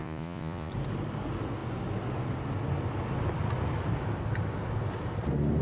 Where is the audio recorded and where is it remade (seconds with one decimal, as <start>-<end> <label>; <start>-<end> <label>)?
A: 0.0-0.7 remade; 0.7-5.6 recorded